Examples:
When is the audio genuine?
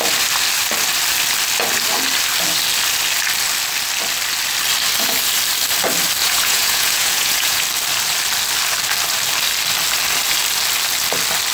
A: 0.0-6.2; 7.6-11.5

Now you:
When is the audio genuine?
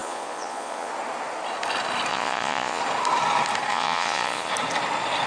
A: 0.9-2.1; 2.8-3.7; 4.5-5.3